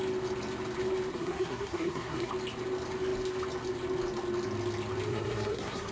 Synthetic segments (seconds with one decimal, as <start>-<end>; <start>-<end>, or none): 1.1-2.3; 5.1-5.9